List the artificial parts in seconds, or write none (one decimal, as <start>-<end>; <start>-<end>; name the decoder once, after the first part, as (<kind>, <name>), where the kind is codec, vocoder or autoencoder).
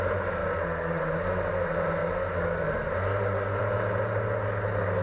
none